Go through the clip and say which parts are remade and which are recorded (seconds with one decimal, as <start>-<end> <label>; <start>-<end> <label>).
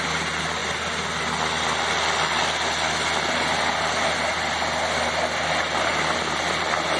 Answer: 0.0-7.0 recorded